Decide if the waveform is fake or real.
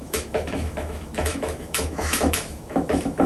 fake